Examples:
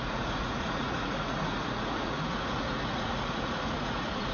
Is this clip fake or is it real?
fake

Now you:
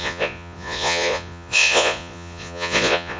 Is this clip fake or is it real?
fake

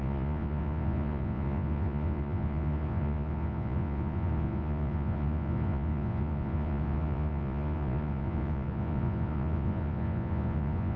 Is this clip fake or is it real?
fake